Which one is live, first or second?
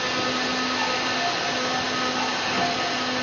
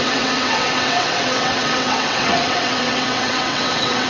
first